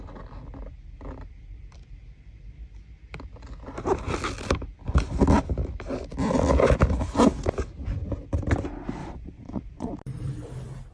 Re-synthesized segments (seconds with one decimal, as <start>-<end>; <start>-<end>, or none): 9.0-9.9